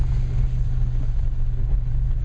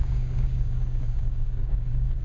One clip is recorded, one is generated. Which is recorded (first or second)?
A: first